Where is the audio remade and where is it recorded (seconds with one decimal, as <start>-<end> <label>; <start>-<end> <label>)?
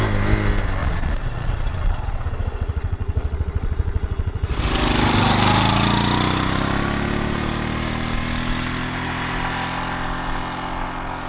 0.0-0.8 recorded; 0.8-4.6 remade; 4.6-11.3 recorded